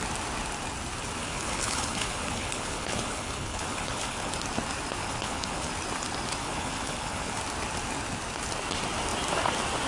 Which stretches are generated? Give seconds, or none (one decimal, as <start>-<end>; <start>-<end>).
1.2-4.3; 5.0-5.7; 6.4-7.4

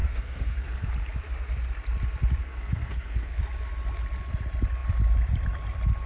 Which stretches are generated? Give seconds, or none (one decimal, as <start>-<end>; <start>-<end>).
0.0-0.9; 2.4-3.4

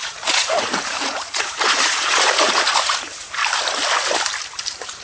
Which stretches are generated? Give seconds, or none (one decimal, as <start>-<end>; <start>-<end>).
0.0-3.4

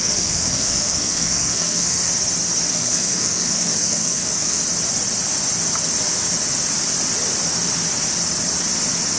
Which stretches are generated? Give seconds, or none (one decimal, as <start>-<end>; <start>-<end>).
0.0-2.1; 2.7-4.6

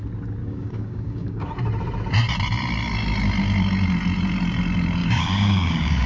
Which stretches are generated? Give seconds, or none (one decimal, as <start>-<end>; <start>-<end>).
0.4-1.5; 5.0-6.1

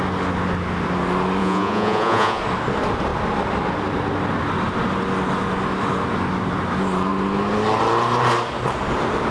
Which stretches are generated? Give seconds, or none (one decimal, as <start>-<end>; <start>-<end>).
1.4-2.4